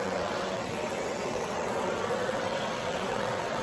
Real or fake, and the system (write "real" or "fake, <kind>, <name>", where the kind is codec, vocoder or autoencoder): fake, vocoder, WaveNeXt